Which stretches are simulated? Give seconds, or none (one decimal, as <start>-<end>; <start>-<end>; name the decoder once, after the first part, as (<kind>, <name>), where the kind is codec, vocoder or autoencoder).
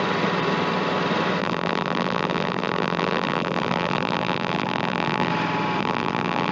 1.4-5.3 (vocoder, BigVGAN v2); 5.8-6.5